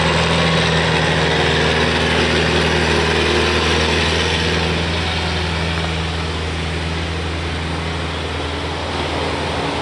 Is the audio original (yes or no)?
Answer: yes